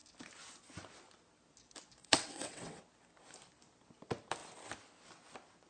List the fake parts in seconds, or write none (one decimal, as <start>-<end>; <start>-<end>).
2.0-2.8